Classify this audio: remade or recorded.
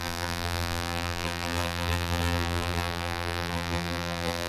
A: remade